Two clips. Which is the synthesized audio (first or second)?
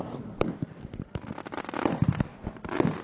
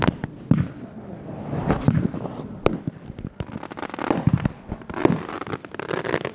second